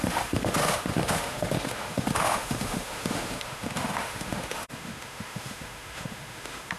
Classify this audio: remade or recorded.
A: remade